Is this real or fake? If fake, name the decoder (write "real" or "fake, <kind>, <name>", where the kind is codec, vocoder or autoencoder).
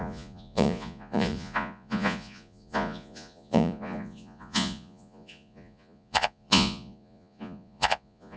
fake, vocoder, Vocos